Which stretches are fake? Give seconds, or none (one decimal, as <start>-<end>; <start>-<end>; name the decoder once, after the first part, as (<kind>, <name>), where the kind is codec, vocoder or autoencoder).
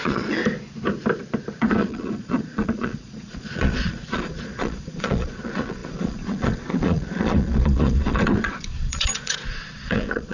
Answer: 0.0-0.4 (vocoder, Vocos); 1.6-10.3